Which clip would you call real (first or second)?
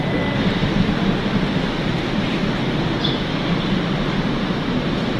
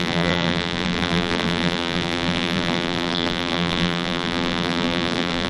first